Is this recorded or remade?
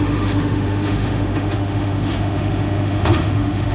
remade